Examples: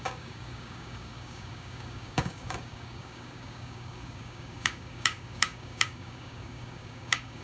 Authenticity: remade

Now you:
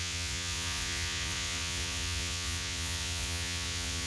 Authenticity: remade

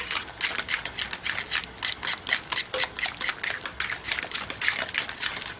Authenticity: recorded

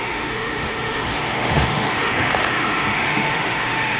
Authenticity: remade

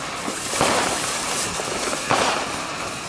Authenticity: recorded